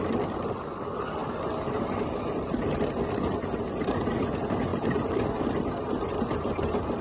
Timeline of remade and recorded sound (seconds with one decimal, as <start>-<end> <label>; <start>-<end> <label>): 0.0-4.7 recorded; 4.7-5.4 remade; 5.4-7.0 recorded